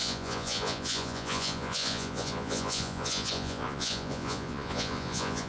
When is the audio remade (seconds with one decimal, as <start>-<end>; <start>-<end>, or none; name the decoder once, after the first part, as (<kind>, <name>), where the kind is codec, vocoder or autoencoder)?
0.0-5.5 (vocoder, Vocos)